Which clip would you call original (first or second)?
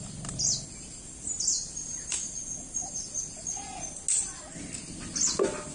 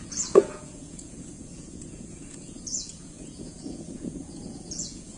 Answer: first